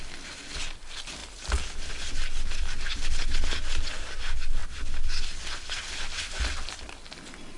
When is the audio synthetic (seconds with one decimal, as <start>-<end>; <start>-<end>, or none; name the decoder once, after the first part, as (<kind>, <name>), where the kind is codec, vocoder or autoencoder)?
none